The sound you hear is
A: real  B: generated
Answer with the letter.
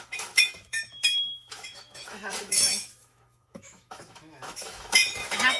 B